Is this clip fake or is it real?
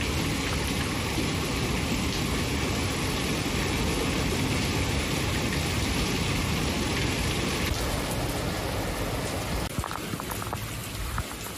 real